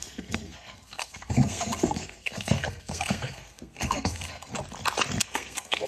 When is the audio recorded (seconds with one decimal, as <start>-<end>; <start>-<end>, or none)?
4.5-5.2